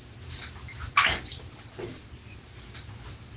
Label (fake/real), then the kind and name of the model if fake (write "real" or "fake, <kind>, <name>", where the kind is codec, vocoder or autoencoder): real